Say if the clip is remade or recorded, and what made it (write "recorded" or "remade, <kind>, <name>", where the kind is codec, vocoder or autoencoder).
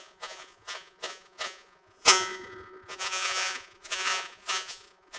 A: remade, vocoder, Vocos